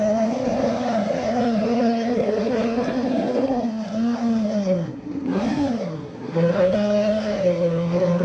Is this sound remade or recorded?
remade